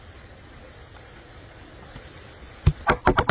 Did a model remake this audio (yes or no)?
no